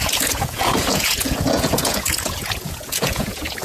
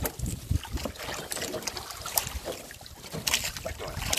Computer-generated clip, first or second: first